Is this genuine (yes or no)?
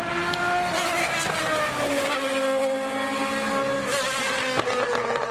yes